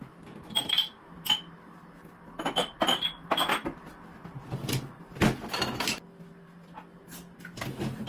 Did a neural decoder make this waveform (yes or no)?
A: no